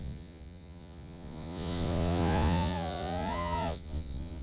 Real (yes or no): no